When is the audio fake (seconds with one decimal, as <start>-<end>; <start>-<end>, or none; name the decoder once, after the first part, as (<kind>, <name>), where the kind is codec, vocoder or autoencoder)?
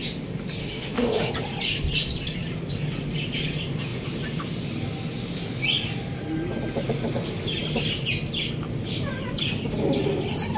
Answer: 0.6-1.3 (autoencoder, DAC-VAE)